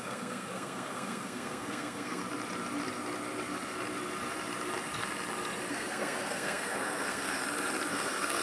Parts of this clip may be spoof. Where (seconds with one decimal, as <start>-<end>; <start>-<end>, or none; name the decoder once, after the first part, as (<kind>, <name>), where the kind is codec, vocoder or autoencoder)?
0.0-2.2 (codec, SNAC); 5.7-7.4; 7.9-8.4